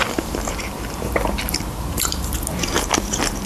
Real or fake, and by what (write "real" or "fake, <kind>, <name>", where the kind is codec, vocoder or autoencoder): fake, vocoder, BigVGAN v2